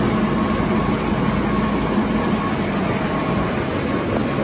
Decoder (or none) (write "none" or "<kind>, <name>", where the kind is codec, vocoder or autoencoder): none